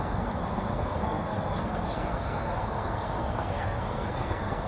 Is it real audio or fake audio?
fake